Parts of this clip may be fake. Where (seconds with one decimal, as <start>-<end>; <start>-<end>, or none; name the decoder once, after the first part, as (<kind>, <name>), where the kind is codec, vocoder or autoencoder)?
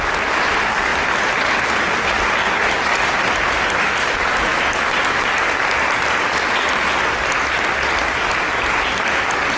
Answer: none